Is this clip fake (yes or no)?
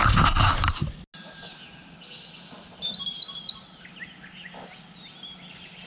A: no